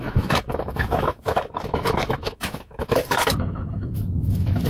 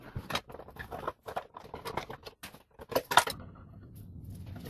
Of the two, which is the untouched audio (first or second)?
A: second